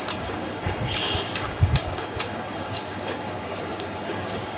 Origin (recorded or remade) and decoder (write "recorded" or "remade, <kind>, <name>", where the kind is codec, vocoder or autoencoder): remade, codec, DAC